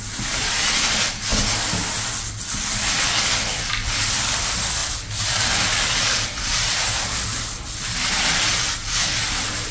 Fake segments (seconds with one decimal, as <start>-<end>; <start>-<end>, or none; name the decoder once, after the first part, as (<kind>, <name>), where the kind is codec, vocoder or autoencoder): none